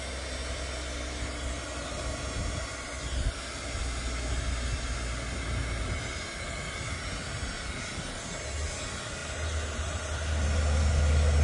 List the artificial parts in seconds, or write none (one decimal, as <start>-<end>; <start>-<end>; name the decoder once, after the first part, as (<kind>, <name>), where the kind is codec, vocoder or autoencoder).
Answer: none